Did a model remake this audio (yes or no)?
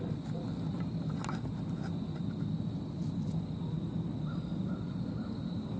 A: no